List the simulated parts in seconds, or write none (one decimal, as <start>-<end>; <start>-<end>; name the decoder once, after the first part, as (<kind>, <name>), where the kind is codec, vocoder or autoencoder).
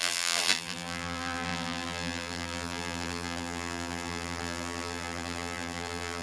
0.0-6.2 (vocoder, BigVGAN v2)